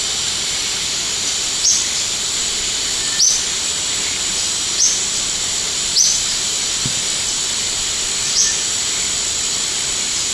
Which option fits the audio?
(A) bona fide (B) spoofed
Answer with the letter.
A